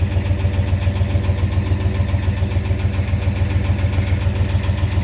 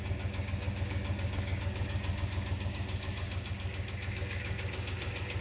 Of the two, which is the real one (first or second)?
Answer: first